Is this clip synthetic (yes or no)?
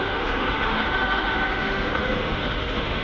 yes